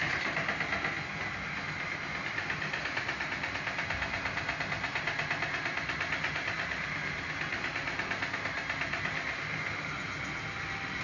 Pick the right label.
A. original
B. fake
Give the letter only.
A